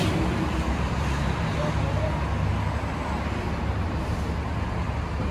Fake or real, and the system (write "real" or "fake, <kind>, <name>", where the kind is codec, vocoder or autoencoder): real